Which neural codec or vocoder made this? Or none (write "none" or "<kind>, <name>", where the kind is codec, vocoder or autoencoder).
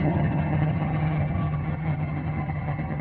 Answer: vocoder, HiFi-GAN